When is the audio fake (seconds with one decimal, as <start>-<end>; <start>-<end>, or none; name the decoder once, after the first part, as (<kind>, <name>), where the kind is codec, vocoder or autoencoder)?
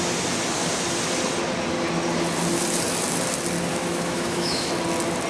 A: 3.7-4.7 (autoencoder, DAC-VAE)